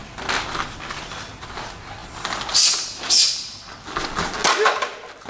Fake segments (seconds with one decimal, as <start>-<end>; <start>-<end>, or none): none